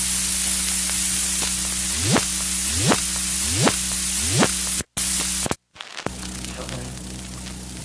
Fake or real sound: real